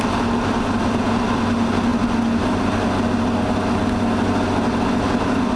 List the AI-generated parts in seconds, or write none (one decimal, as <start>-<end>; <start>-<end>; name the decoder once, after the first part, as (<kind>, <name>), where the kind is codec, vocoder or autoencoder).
none